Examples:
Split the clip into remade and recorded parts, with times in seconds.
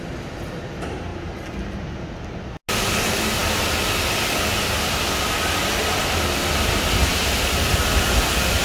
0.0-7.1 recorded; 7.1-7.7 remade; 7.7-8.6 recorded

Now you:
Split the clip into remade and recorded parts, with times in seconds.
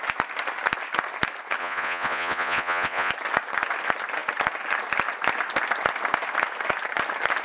0.0-1.6 recorded; 1.6-3.1 remade; 3.1-7.4 recorded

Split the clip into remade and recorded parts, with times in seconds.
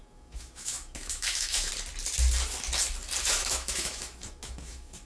0.0-1.7 remade; 1.7-3.2 recorded; 3.2-5.1 remade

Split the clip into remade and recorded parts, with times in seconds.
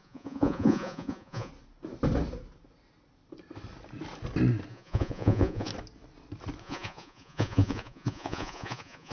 0.0-1.5 remade; 1.5-4.7 recorded; 4.7-5.7 remade; 5.7-6.6 recorded; 6.6-9.1 remade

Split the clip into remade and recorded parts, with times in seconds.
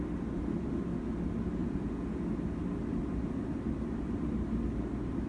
0.0-1.6 recorded; 1.6-2.2 remade; 2.2-5.3 recorded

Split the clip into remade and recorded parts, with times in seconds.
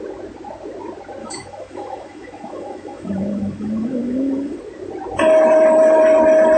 0.0-1.2 recorded; 1.2-4.6 remade; 4.6-6.6 recorded